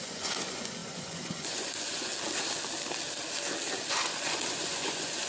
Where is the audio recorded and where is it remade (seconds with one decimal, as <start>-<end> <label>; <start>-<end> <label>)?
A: 0.0-2.1 remade; 2.1-3.9 recorded; 3.9-5.3 remade

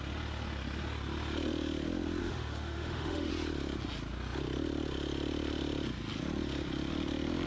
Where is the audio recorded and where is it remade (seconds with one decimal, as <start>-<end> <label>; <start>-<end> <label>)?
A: 0.0-2.2 recorded; 2.2-3.3 remade; 3.3-7.5 recorded

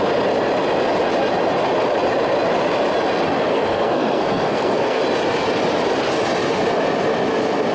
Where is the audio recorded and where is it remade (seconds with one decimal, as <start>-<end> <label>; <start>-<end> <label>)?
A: 0.0-3.5 recorded; 3.5-5.0 remade; 5.0-7.7 recorded

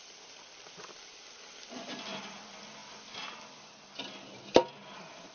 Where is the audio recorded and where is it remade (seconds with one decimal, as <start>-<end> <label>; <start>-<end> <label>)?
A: 0.0-5.3 recorded